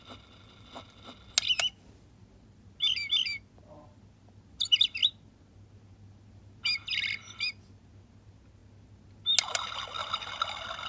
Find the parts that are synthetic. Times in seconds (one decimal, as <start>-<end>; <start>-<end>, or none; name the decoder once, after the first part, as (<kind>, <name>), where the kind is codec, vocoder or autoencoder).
none

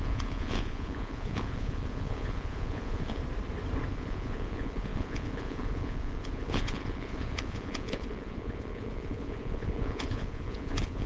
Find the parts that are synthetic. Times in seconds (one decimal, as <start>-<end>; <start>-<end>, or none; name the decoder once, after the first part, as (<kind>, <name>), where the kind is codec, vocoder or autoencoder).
0.0-3.2 (vocoder, Vocos); 3.9-11.1

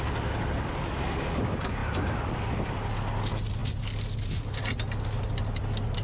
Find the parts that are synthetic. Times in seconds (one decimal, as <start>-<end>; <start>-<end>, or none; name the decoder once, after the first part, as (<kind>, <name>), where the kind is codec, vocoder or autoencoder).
none

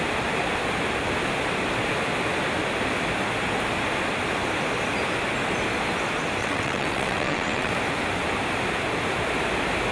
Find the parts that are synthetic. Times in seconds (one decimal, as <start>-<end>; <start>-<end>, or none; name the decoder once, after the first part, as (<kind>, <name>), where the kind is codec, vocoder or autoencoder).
6.4-7.7 (vocoder, WaveNeXt)

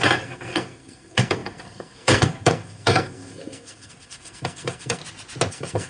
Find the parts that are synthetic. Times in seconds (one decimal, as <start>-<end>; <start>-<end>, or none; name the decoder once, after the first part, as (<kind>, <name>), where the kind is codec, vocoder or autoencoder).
0.0-5.0 (codec, SNAC); 5.5-5.9